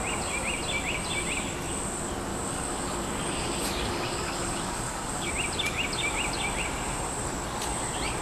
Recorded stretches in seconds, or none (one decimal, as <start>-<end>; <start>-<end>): 0.0-2.3; 5.3-8.2